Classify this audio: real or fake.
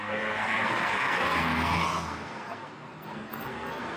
fake